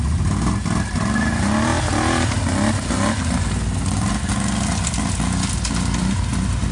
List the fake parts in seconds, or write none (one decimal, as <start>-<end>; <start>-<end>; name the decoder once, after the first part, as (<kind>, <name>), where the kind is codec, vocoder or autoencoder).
none